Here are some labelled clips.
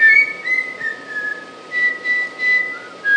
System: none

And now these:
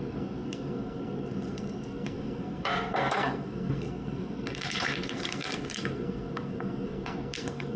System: codec, SNAC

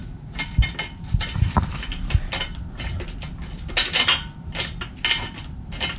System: none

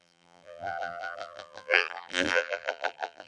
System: vocoder, BigVGAN v2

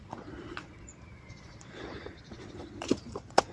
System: vocoder, Vocos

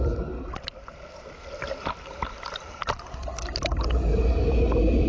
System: none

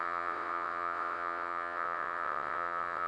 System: vocoder, WaveNeXt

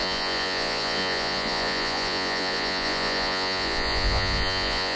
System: vocoder, Vocos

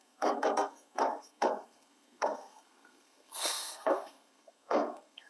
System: codec, SNAC